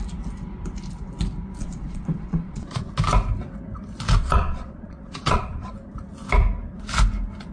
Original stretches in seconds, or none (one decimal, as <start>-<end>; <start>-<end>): 0.0-1.6; 2.9-4.2; 5.7-7.5